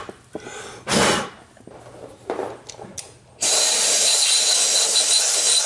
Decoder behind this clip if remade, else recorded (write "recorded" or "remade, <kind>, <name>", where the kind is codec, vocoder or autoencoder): recorded